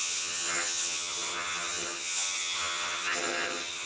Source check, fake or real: fake